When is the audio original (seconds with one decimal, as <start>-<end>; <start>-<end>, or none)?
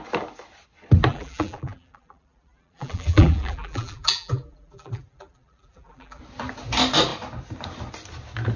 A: 0.0-1.1; 6.2-8.6